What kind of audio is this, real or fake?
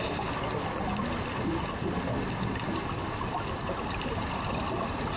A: real